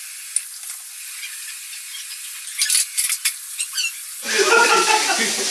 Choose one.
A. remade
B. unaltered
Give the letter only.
B